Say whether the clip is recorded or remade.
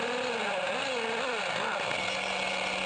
recorded